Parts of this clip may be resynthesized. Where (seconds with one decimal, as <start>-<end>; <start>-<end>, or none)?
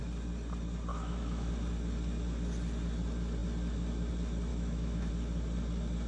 0.9-1.5; 4.5-5.1